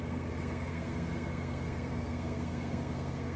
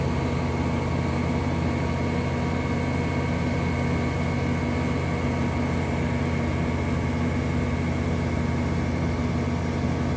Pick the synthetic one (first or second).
first